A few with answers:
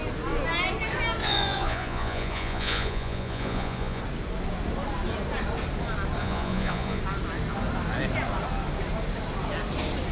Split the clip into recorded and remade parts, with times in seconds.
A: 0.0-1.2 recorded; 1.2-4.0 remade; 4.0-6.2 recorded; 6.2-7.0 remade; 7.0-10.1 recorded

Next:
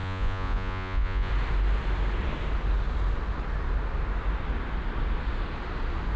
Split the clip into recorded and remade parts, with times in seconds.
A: 0.0-1.3 remade; 1.3-6.2 recorded